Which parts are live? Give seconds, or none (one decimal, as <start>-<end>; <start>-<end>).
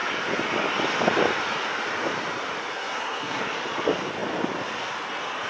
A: 0.0-2.7; 3.4-5.5